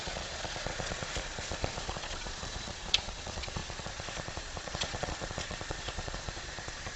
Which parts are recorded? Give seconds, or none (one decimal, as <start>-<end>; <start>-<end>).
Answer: none